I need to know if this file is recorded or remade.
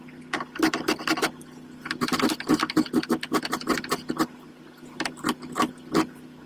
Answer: recorded